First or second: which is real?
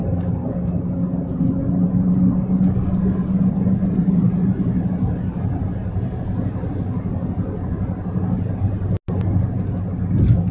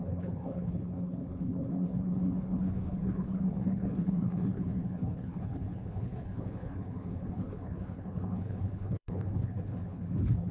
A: first